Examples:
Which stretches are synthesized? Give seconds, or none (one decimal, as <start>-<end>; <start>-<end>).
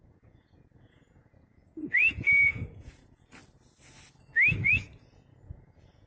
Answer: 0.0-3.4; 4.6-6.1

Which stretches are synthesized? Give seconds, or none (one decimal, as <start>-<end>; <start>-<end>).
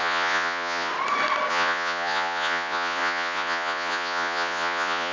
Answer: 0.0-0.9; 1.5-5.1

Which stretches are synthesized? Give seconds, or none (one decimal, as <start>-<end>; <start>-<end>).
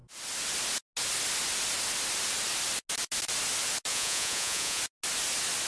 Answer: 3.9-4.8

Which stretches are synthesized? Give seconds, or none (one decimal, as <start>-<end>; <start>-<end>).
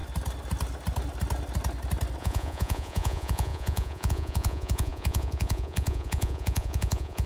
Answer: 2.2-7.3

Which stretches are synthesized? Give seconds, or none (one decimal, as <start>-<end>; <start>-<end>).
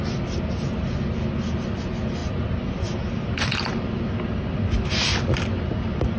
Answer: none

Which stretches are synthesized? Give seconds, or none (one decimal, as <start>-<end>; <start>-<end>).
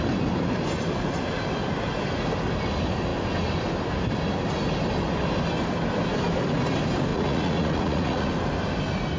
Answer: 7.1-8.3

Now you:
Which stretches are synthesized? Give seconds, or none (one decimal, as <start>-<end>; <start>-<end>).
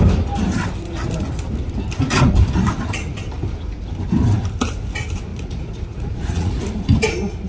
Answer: 5.3-6.6